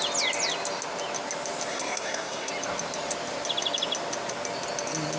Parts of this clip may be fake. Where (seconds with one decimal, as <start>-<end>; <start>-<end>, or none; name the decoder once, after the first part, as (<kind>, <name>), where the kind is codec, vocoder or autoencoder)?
1.7-2.5 (codec, SNAC)